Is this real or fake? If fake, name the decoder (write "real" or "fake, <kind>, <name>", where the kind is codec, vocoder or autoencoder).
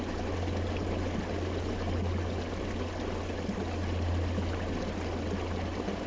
real